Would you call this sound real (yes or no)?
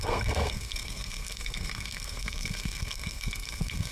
no